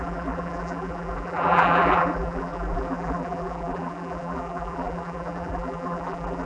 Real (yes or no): no